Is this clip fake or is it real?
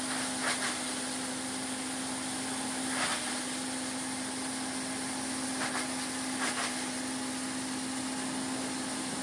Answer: real